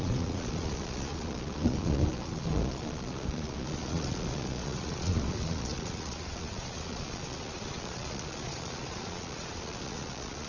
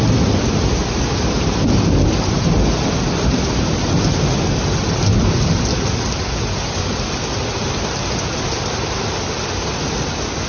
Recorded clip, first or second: second